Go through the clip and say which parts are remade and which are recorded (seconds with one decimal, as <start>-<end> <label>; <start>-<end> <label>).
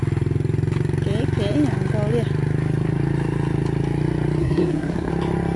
0.0-4.4 recorded; 4.4-5.1 remade; 5.1-5.6 recorded